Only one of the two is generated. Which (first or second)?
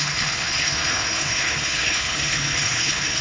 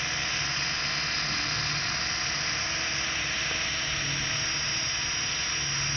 first